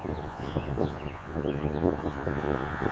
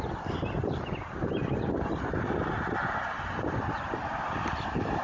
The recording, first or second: second